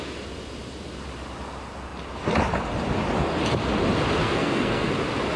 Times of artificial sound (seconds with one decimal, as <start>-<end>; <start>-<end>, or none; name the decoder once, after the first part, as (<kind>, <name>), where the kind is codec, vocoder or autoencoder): 4.2-4.9 (codec, SNAC)